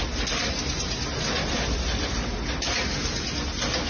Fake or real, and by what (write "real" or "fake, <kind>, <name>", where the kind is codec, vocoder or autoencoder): real